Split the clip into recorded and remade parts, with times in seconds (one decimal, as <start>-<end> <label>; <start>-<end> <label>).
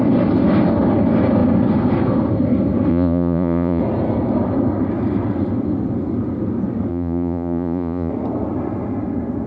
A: 0.0-2.9 recorded; 2.9-3.8 remade; 3.8-6.9 recorded; 6.9-8.1 remade; 8.1-9.5 recorded